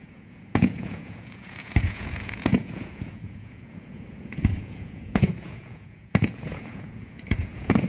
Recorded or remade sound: remade